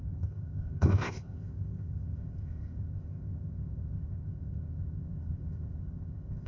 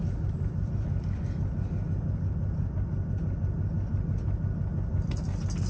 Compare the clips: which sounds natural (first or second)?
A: second